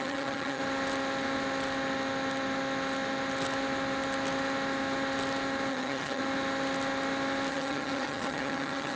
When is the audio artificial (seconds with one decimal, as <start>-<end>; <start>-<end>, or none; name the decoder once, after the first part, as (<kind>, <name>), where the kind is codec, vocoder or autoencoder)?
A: 0.0-0.6 (vocoder, HiFi-GAN); 5.7-6.2; 7.5-9.0